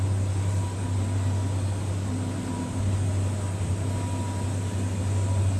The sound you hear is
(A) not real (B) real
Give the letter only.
B